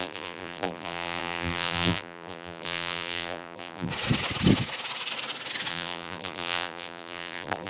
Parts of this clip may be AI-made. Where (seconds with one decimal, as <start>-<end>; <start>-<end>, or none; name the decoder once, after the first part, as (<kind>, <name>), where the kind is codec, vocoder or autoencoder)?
0.0-3.9 (vocoder, BigVGAN v2); 5.7-7.7